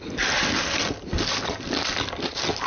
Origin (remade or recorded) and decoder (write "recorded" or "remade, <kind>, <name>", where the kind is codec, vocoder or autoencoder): recorded